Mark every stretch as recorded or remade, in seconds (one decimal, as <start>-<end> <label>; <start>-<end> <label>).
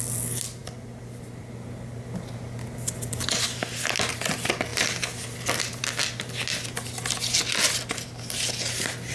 0.0-9.1 recorded